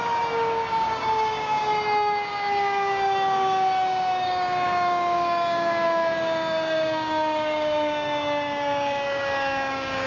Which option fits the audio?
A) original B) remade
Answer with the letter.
B